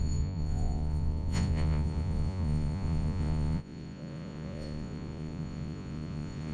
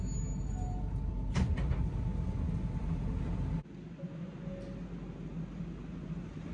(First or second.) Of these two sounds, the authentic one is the second